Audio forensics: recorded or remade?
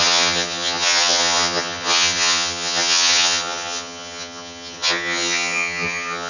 remade